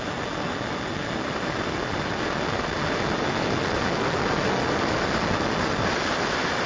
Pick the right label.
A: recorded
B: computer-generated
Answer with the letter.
A